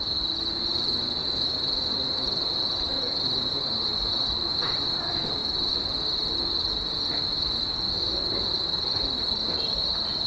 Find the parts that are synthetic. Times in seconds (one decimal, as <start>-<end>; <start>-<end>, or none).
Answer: none